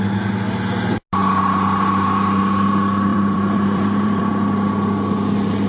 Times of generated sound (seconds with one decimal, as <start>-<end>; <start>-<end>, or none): 3.1-4.3